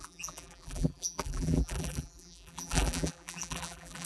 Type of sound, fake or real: fake